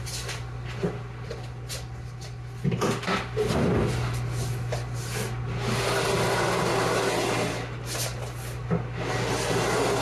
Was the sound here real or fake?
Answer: real